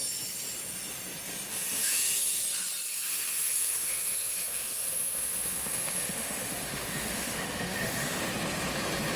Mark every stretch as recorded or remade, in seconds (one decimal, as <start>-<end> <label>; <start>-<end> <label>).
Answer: 0.0-1.5 recorded; 1.5-2.4 remade; 2.4-2.9 recorded; 2.9-8.2 remade; 8.2-9.2 recorded